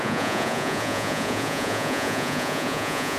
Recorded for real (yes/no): no